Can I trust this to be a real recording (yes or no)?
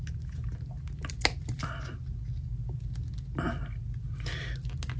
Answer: yes